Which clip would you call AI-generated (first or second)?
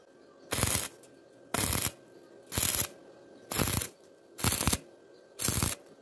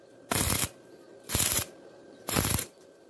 second